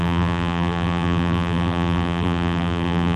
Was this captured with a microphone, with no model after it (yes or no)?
no